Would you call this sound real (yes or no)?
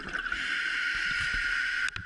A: yes